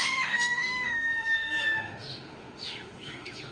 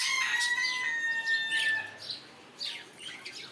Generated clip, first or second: first